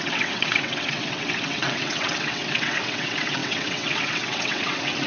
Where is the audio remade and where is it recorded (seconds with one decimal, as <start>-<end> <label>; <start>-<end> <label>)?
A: 0.0-5.1 remade